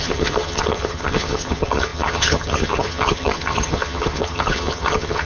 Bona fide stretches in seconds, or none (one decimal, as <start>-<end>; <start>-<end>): none